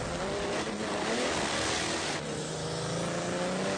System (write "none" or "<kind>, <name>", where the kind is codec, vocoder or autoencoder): none